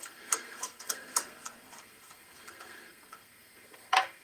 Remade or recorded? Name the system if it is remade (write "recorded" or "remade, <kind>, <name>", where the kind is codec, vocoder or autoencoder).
remade, codec, SNAC